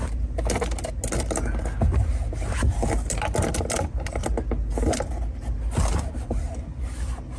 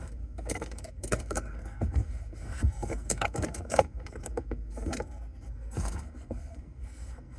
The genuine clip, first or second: first